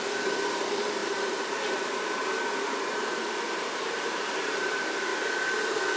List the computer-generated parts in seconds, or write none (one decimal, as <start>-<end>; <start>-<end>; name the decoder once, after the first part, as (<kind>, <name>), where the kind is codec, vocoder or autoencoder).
0.0-5.1 (vocoder, BigVGAN v2)